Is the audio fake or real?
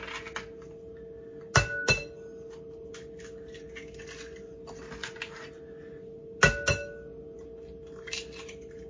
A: real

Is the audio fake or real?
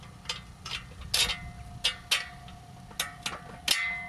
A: real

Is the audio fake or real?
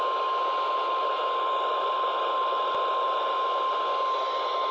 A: real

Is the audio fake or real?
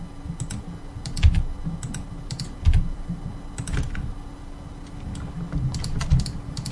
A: real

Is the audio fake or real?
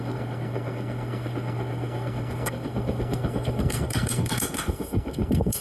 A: fake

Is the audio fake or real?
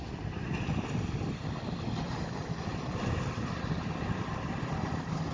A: real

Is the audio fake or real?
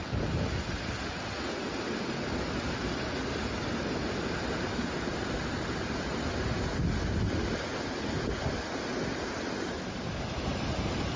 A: real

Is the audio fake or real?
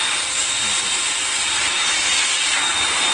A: real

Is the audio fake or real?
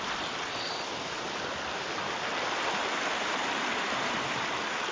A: real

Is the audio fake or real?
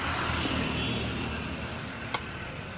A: real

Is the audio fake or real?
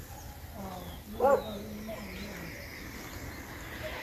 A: real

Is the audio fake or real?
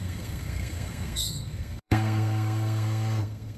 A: fake